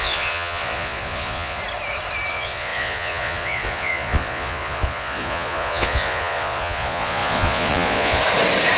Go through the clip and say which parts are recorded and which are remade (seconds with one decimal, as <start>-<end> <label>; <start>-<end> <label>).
0.0-1.6 remade; 1.6-2.3 recorded; 2.3-8.2 remade; 8.2-8.8 recorded